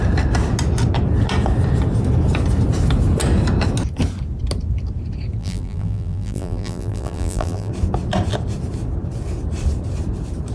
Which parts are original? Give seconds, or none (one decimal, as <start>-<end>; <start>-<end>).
0.0-5.4; 7.7-10.5